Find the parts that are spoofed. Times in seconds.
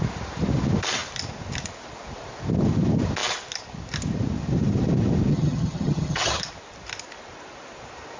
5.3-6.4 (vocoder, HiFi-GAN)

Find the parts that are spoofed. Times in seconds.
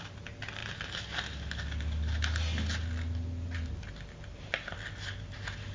none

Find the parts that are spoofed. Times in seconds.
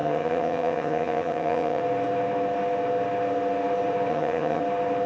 0.0-1.8 (vocoder, HiFi-GAN); 4.1-4.6